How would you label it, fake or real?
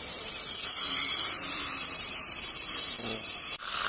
real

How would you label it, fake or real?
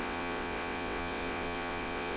fake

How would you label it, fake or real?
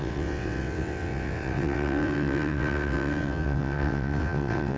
fake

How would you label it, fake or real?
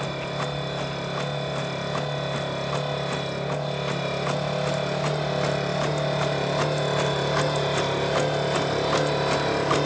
real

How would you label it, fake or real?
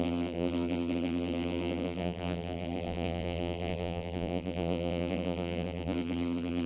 fake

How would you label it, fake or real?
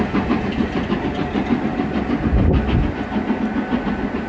real